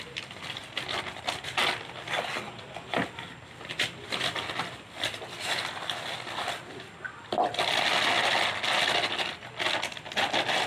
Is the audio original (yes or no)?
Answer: yes